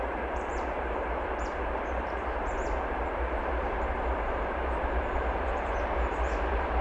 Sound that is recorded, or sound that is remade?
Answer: remade